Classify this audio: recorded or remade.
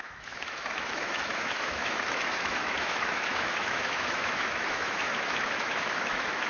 remade